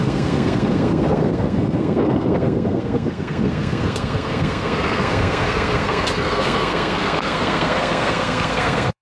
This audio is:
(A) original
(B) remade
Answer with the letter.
B